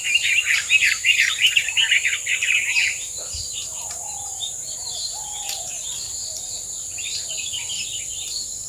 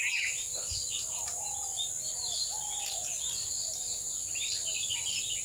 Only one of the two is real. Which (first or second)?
second